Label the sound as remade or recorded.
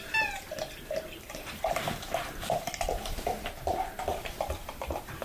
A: remade